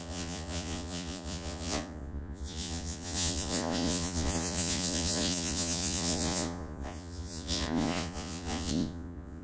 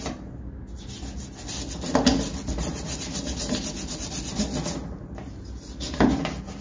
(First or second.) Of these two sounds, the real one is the second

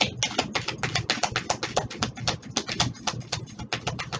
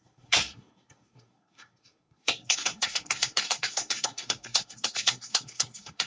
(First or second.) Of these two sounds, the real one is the first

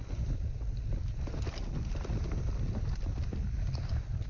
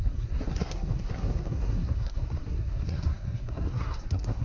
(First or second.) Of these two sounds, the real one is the first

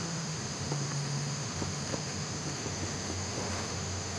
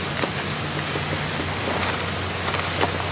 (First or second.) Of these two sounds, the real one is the second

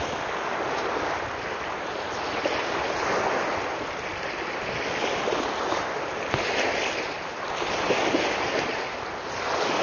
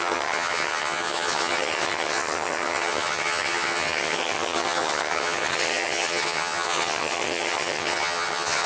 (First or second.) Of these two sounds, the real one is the first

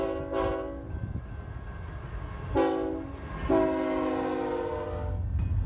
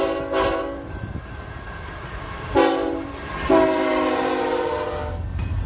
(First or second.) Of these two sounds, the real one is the first